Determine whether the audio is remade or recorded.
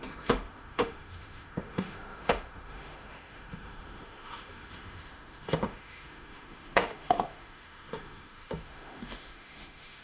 remade